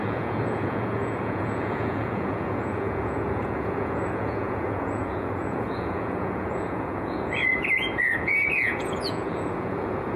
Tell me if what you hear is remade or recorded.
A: remade